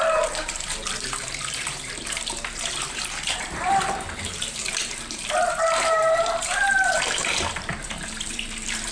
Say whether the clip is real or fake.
fake